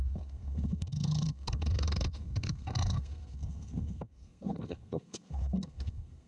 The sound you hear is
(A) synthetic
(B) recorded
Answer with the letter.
A